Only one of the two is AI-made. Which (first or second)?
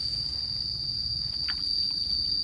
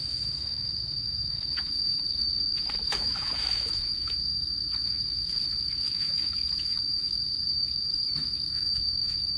second